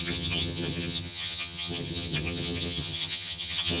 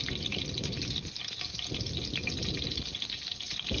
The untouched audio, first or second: second